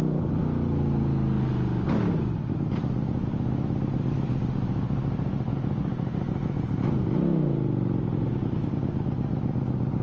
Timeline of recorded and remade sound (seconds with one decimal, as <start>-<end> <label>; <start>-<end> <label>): 0.0-10.0 recorded